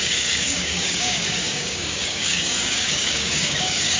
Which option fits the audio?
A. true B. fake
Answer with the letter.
B